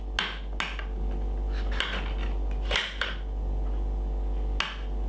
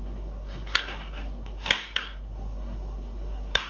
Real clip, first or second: first